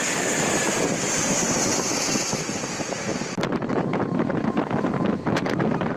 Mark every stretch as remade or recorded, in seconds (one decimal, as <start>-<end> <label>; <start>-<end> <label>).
0.0-6.0 recorded